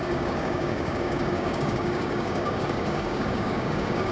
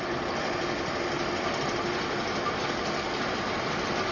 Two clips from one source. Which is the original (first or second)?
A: second